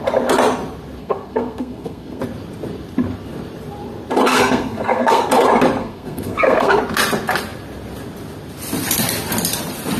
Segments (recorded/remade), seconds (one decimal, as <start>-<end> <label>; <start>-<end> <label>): 0.0-1.0 recorded; 1.0-2.2 remade; 2.2-4.3 recorded; 4.3-5.3 remade; 5.3-5.8 recorded; 5.8-6.8 remade; 6.8-10.0 recorded